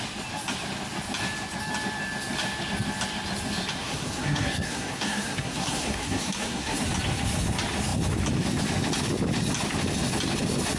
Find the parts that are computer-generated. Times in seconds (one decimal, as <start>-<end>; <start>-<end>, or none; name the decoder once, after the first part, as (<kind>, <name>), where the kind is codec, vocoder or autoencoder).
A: 3.8-6.8 (codec, SNAC)